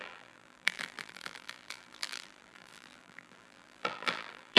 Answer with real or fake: fake